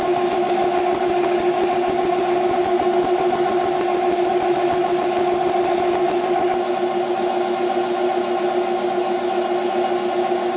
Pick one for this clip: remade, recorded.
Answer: recorded